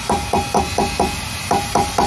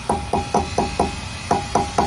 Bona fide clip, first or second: second